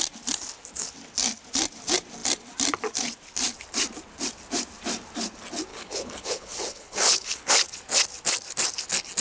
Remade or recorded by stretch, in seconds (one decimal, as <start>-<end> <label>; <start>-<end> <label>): 0.0-5.7 recorded; 5.7-7.5 remade; 7.5-9.2 recorded